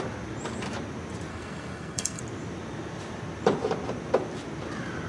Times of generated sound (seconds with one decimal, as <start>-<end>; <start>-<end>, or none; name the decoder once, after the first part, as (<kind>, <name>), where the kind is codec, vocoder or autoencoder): 1.3-2.2 (codec, SNAC)